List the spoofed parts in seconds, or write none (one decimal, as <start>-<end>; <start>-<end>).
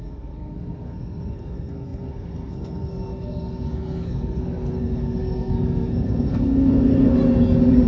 0.0-7.2